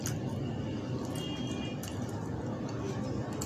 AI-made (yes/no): no